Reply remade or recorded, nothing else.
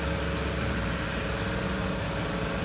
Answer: recorded